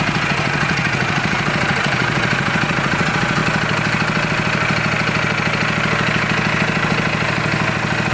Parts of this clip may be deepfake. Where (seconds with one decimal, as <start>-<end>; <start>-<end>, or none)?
0.0-3.4